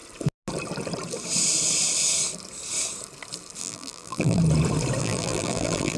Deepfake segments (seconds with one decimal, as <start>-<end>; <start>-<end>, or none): 3.6-4.4; 5.0-6.0